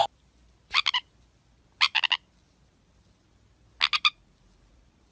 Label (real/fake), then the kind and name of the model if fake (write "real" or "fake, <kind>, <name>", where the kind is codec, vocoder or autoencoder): real